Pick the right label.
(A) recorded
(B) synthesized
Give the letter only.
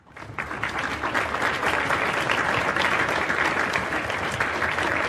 A